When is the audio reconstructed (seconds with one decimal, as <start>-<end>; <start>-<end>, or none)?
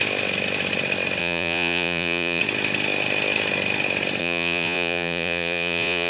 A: 1.2-2.4; 4.2-6.1